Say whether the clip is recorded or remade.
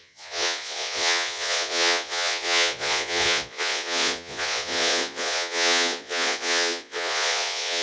remade